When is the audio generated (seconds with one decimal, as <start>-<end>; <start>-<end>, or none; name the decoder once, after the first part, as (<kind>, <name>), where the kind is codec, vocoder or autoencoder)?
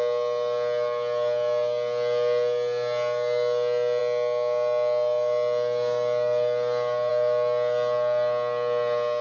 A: none